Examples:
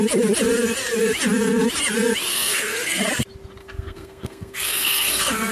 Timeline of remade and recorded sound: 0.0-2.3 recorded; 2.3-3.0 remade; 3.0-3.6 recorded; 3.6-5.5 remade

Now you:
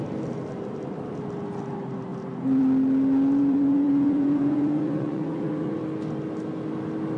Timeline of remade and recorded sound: 0.0-3.4 recorded; 3.4-5.8 remade; 5.8-7.2 recorded

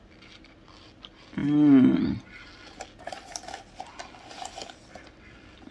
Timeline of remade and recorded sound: 0.0-5.7 recorded

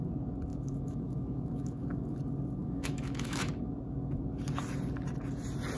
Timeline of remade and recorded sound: 0.0-0.5 recorded; 0.5-2.2 remade; 2.2-2.6 recorded; 2.6-3.5 remade; 3.5-5.8 recorded

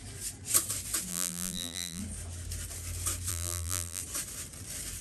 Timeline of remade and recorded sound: 0.0-1.1 recorded; 1.1-2.0 remade; 2.0-3.3 recorded; 3.3-4.0 remade; 4.0-5.0 recorded

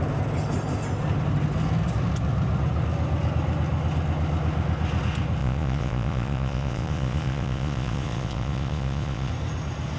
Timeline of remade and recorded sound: 0.0-5.4 recorded; 5.4-9.3 remade; 9.3-10.0 recorded

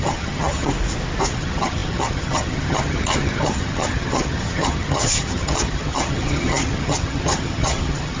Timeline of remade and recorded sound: 0.0-0.7 remade; 0.7-1.3 recorded; 1.3-8.2 remade